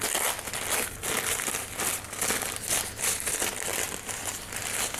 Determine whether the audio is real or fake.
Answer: real